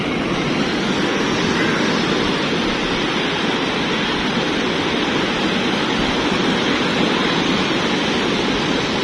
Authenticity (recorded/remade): recorded